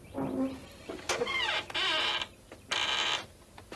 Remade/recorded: recorded